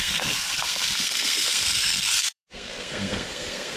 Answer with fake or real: fake